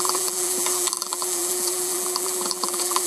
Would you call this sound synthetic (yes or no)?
yes